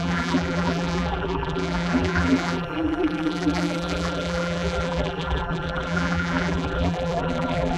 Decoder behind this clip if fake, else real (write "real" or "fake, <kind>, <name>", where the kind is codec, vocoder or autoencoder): fake, vocoder, BigVGAN v2